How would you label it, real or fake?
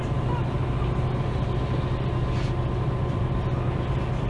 real